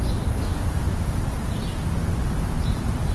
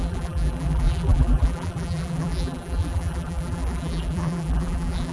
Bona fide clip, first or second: first